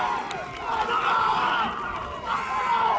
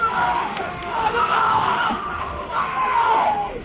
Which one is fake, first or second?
second